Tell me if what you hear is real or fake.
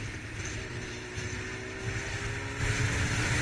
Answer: real